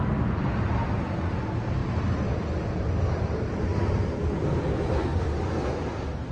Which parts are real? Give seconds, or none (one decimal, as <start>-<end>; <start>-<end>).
0.0-3.7; 4.6-6.3